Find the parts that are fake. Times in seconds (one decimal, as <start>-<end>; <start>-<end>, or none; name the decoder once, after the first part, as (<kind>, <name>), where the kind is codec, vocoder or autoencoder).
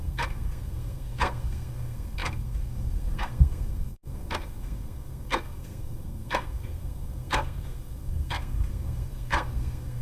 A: 0.0-10.0 (codec, SNAC)